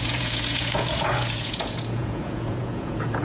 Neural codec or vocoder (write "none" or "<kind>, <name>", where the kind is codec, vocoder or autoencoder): vocoder, Vocos